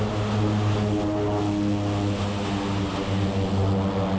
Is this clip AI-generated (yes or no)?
no